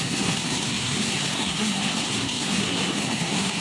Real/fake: fake